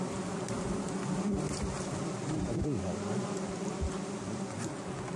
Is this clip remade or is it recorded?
recorded